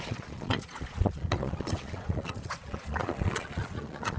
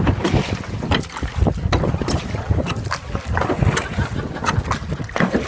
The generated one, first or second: first